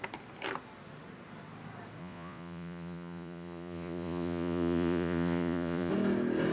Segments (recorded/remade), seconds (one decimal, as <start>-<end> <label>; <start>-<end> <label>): 0.0-2.0 recorded; 2.0-5.9 remade; 5.9-6.5 recorded